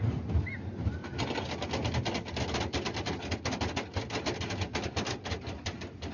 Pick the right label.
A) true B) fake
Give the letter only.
A